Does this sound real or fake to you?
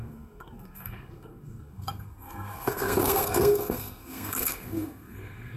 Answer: fake